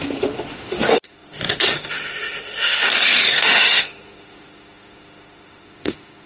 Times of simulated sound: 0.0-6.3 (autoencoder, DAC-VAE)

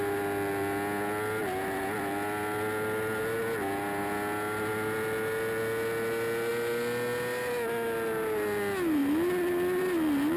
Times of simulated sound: none

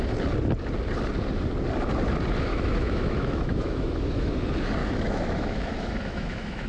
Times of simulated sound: 2.5-4.3 (autoencoder, DAC-VAE); 4.8-6.7